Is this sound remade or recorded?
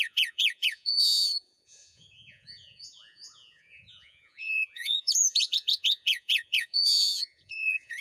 remade